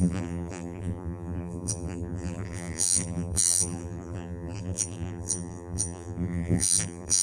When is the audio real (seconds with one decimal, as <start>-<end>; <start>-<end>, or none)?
none